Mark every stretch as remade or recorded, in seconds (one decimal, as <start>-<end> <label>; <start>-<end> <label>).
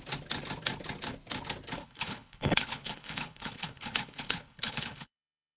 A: 0.0-1.8 recorded; 1.8-5.6 remade